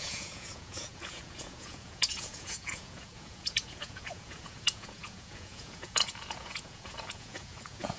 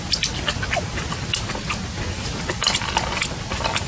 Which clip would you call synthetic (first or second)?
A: first